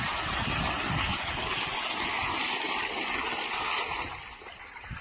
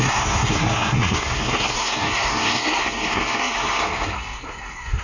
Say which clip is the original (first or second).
first